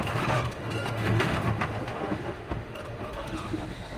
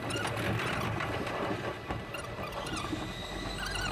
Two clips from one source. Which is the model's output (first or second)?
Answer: first